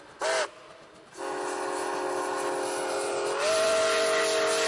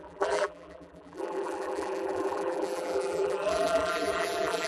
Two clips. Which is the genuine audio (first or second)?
first